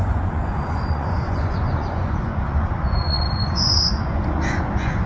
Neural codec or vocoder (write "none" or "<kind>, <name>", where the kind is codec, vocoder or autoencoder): vocoder, Vocos